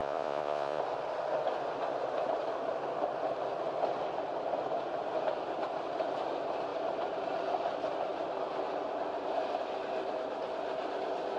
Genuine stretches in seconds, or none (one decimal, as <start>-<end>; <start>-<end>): 0.8-11.4